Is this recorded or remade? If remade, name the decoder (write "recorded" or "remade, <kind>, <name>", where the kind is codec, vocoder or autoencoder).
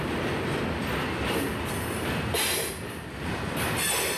recorded